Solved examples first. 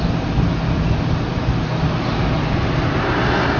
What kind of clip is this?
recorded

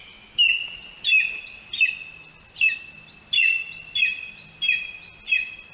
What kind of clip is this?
recorded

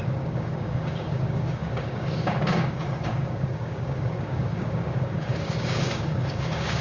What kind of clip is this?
remade